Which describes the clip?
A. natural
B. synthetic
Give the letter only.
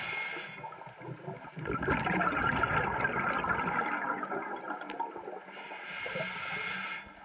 A